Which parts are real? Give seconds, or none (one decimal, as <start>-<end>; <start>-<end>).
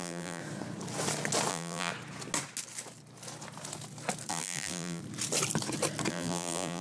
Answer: 0.4-1.5; 1.9-4.3; 5.0-6.1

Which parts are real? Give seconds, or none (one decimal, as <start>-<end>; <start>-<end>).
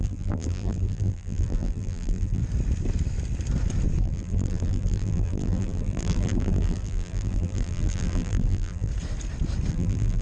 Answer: 2.4-4.0; 8.9-9.7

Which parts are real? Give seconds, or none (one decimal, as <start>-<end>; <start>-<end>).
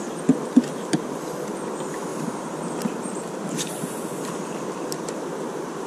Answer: 0.0-2.1